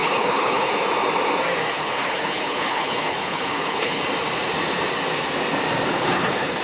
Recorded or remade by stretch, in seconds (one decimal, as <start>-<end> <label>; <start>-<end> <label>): 0.0-0.7 remade; 0.7-1.7 recorded; 1.7-4.0 remade; 4.0-5.9 recorded; 5.9-6.6 remade